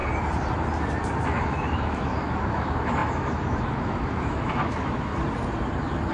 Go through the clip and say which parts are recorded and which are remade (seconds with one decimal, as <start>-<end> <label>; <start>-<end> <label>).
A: 0.0-1.2 recorded; 1.2-5.1 remade; 5.1-6.1 recorded

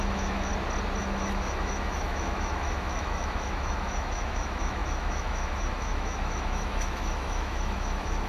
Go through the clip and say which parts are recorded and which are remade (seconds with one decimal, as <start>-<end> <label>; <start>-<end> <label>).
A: 0.0-0.5 remade; 0.5-1.0 recorded; 1.0-8.3 remade

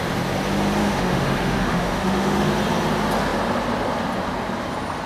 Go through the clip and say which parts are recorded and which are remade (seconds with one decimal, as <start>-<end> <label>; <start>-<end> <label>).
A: 0.0-0.8 recorded; 0.8-2.5 remade; 2.5-5.1 recorded

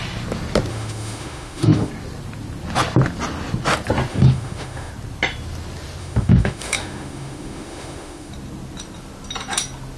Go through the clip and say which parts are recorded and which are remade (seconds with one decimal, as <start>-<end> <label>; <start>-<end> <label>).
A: 0.0-0.7 recorded; 0.7-1.9 remade; 1.9-4.1 recorded; 4.1-4.9 remade; 4.9-6.0 recorded; 6.0-8.3 remade; 8.3-10.0 recorded

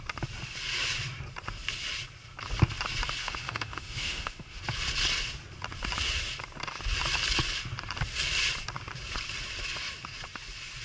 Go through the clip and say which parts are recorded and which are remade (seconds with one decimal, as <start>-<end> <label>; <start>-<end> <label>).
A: 0.0-3.2 recorded; 3.2-4.6 remade; 4.6-10.8 recorded

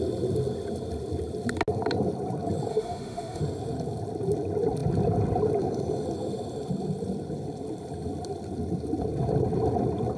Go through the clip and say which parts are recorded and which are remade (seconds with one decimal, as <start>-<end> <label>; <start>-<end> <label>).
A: 0.0-2.7 recorded; 2.7-3.4 remade; 3.4-10.2 recorded